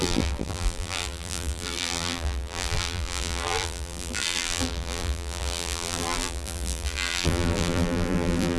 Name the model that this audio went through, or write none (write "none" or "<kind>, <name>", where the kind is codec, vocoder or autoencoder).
vocoder, BigVGAN v2